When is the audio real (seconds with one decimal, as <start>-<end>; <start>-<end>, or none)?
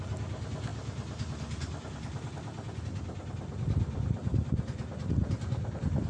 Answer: 0.0-6.1